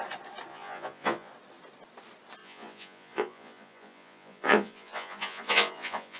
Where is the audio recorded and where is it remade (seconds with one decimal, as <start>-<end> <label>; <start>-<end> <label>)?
0.0-0.5 recorded; 0.5-1.3 remade; 1.3-2.4 recorded; 2.4-6.2 remade